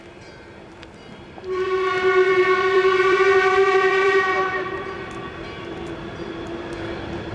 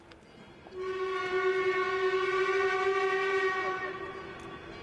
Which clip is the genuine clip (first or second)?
second